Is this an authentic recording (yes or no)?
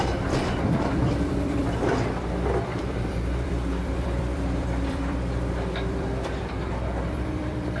no